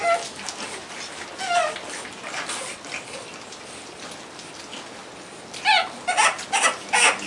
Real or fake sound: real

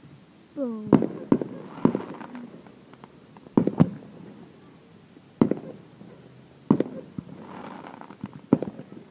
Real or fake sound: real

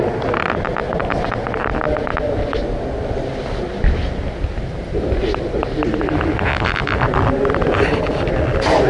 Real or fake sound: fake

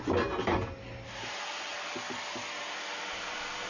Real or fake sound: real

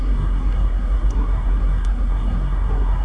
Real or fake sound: fake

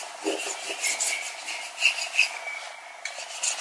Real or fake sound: real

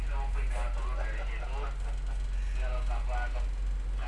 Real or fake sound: real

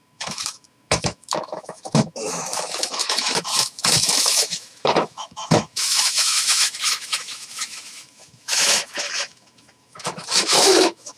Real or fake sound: fake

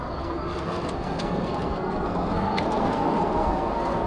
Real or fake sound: fake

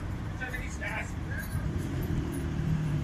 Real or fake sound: fake